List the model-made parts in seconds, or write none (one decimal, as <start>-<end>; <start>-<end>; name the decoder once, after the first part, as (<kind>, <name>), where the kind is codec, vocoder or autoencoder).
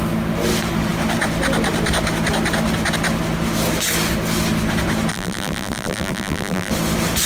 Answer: 5.1-6.7 (vocoder, BigVGAN v2)